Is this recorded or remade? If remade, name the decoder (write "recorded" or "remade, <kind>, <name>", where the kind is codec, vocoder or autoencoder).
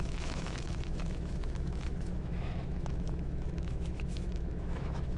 remade, autoencoder, DAC-VAE